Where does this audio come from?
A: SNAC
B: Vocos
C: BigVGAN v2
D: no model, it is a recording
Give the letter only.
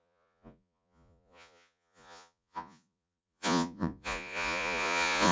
B